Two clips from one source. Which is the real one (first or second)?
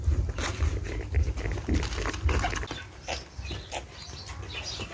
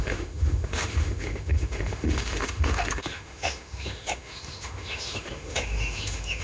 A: first